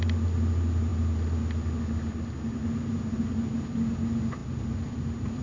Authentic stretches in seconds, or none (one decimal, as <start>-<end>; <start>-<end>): 0.0-5.4